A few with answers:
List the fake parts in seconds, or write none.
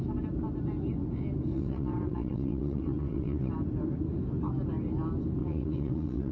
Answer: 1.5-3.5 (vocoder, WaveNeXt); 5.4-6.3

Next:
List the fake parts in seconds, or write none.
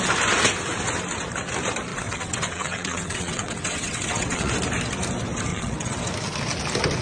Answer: 1.9-4.5 (vocoder, WaveNeXt); 5.5-6.0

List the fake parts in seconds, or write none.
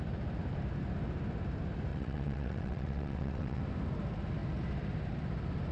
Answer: 1.9-3.6 (vocoder, WaveNeXt)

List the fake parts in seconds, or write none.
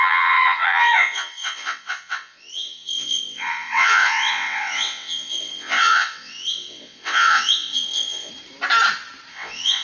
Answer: 0.0-8.3 (vocoder, WaveNeXt); 9.3-9.8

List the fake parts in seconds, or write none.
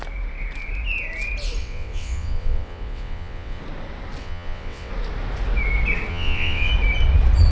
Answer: 1.6-3.6 (vocoder, WaveNeXt); 4.2-4.9; 6.1-6.7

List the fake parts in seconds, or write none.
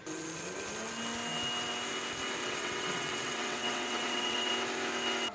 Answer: 2.4-4.5 (vocoder, WaveNeXt)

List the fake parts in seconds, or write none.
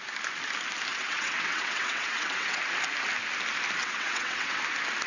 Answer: 0.9-2.6 (vocoder, WaveNeXt); 3.8-4.6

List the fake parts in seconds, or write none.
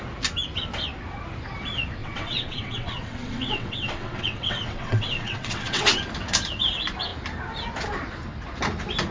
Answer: 2.0-6.0 (vocoder, WaveNeXt)